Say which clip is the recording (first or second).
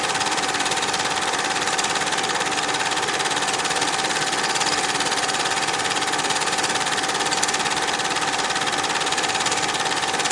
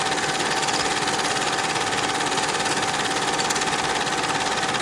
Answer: second